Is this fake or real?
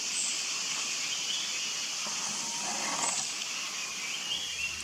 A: real